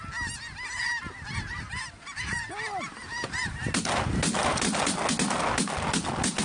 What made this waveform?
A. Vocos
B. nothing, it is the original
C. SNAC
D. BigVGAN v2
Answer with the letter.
B